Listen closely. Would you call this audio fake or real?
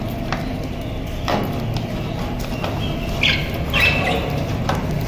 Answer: real